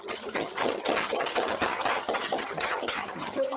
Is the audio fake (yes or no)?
yes